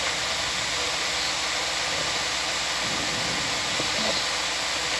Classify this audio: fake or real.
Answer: real